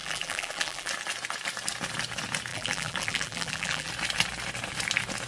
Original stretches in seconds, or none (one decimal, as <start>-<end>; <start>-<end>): 0.9-2.5; 3.9-5.3